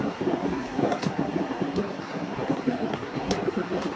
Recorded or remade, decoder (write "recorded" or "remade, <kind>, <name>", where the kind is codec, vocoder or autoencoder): remade, codec, SNAC